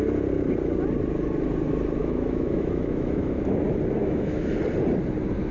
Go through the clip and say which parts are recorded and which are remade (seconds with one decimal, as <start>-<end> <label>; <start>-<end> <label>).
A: 0.0-2.0 recorded; 2.0-3.6 remade; 3.6-4.0 recorded; 4.0-4.6 remade; 4.6-5.5 recorded